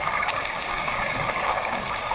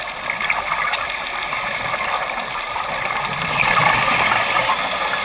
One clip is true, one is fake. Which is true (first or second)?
second